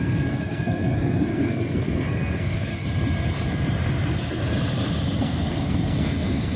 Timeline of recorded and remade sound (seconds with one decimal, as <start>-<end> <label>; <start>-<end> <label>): 0.0-2.7 remade; 2.7-5.2 recorded; 5.2-6.6 remade